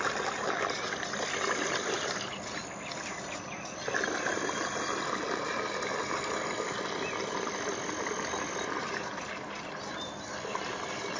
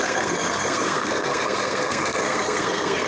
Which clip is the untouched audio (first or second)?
first